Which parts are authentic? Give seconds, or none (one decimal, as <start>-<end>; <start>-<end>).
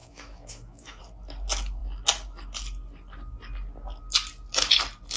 1.0-5.2